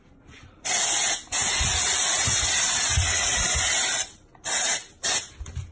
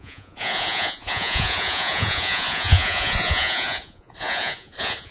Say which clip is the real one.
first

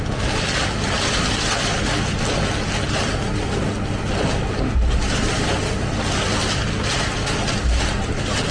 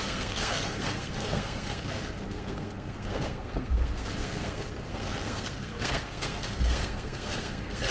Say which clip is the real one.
first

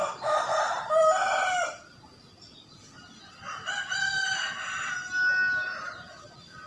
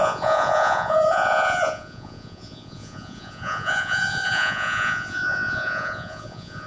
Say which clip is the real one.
first